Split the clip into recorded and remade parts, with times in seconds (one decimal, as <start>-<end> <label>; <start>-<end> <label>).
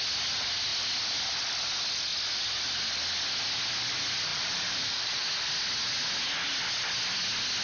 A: 0.0-4.3 recorded; 4.3-5.2 remade; 5.2-7.6 recorded